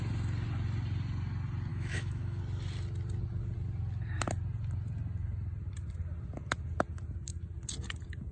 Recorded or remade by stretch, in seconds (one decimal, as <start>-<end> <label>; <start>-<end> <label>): 0.0-1.7 recorded; 1.7-2.4 remade; 2.4-8.3 recorded